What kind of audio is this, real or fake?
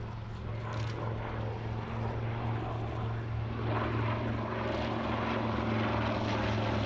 real